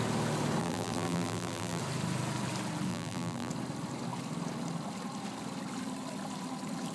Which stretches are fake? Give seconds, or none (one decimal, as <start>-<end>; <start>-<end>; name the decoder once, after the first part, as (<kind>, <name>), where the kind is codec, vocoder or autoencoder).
0.6-1.8 (vocoder, BigVGAN v2); 2.9-3.5